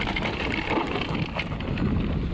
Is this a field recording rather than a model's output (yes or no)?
yes